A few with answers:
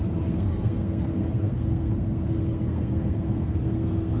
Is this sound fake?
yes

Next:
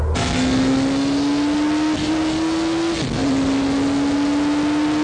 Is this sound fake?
no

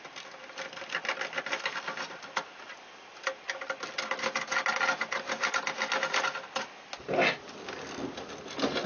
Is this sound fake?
no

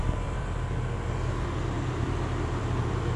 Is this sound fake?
yes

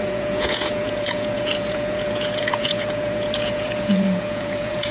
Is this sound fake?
yes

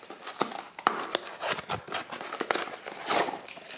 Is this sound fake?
no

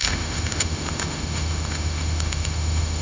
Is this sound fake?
yes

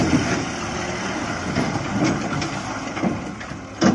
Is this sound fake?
no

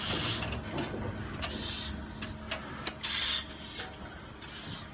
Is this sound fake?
no